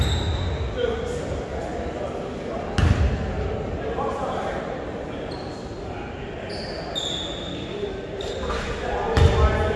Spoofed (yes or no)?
no